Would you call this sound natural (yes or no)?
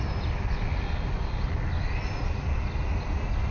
yes